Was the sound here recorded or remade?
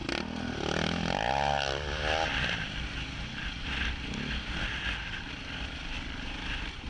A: recorded